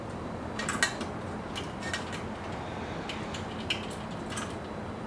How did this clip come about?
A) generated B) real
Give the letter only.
B